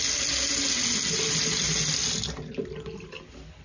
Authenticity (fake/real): real